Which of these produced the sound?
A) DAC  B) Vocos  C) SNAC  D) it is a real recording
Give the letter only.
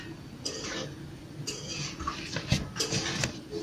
D